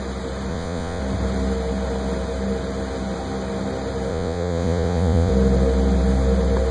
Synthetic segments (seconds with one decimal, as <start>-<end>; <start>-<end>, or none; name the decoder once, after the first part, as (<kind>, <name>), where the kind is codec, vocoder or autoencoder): 0.5-1.0 (vocoder, Vocos); 4.1-5.3